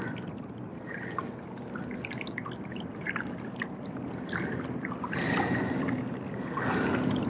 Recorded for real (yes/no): yes